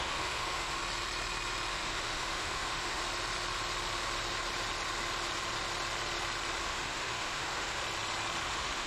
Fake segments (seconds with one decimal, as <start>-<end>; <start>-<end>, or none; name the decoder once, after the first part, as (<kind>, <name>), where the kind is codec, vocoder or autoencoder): 0.0-0.8 (autoencoder, DAC-VAE); 1.7-3.0; 6.6-7.8; 8.4-8.9